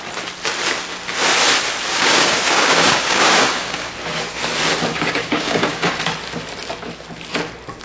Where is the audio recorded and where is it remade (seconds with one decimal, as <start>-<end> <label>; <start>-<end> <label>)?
0.0-1.9 recorded; 1.9-3.9 remade; 3.9-4.9 recorded; 4.9-5.9 remade; 5.9-7.8 recorded